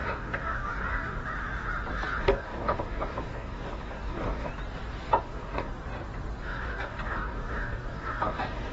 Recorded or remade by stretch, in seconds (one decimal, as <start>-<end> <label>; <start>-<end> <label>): 0.0-1.2 remade; 1.2-2.2 recorded; 2.2-4.5 remade; 4.5-5.2 recorded; 5.2-5.7 remade; 5.7-6.4 recorded; 6.4-8.7 remade